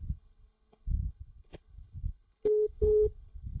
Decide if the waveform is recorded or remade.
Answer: remade